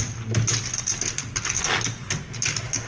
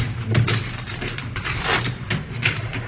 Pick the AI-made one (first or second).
second